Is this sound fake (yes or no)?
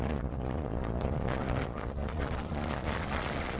yes